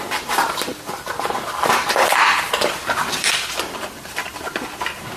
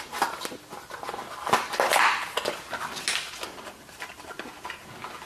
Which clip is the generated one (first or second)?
first